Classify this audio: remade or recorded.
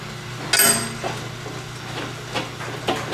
recorded